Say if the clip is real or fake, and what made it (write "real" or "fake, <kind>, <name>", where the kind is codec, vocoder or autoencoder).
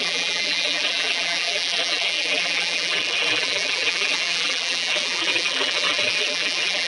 fake, vocoder, BigVGAN v2